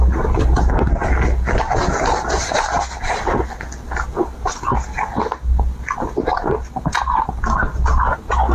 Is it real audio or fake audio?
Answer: real